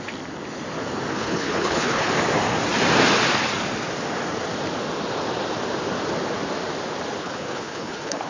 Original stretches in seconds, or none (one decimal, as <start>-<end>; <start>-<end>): 0.0-1.1; 2.1-7.2